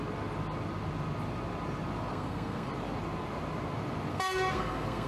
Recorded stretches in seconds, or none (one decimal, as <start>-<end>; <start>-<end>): 0.0-2.1; 2.7-4.1